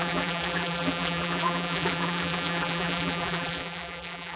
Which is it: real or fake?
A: fake